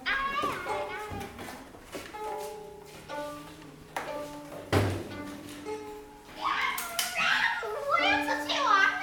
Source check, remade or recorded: remade